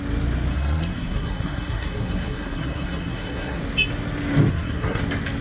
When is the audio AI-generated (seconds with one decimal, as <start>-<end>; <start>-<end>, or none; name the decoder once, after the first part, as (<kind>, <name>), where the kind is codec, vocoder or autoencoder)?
0.5-3.6 (codec, SNAC); 4.5-5.0